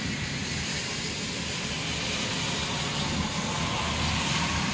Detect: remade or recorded recorded